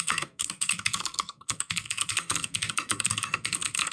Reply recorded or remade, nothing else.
remade